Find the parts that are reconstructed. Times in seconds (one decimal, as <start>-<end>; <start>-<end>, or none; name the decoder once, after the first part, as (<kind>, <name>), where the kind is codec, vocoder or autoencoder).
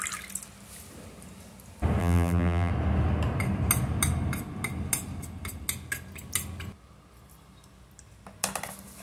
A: 2.0-2.7 (vocoder, BigVGAN v2)